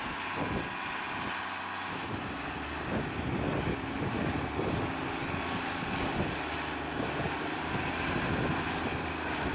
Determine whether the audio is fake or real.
real